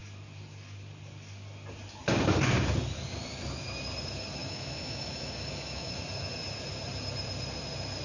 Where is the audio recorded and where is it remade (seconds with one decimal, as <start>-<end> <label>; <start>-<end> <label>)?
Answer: 0.0-4.4 recorded; 4.4-5.9 remade; 5.9-8.0 recorded